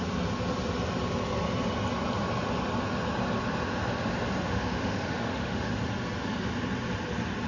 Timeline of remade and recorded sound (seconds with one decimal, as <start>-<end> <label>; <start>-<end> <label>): 0.0-4.4 recorded; 4.4-5.8 remade; 5.8-7.5 recorded